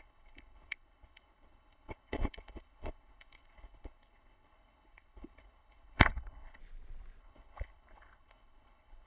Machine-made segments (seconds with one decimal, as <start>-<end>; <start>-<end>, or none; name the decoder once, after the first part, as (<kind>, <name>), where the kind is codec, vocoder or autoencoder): 0.0-6.6 (codec, HILCodec); 7.2-9.1